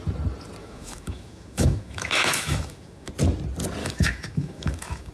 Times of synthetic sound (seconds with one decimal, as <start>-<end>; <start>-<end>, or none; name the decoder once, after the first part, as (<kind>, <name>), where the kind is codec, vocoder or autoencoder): 0.6-3.1 (autoencoder, DAC-VAE); 3.8-5.1